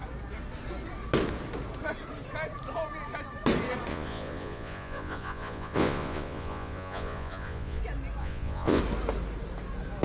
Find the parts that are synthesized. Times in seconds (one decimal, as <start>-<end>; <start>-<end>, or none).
3.9-7.8; 8.2-8.8